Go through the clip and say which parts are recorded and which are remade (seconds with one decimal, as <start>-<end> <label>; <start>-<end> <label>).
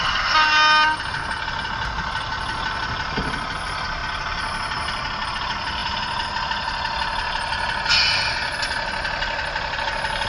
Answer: 0.0-10.3 recorded